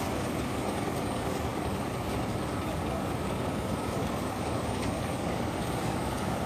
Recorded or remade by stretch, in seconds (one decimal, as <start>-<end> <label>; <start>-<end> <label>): 0.0-6.5 remade